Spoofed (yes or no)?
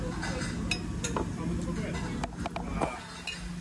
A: no